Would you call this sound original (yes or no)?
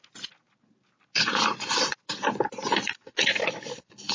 yes